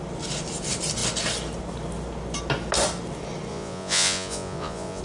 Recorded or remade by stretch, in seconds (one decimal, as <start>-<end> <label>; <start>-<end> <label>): 0.0-3.5 recorded; 3.5-5.0 remade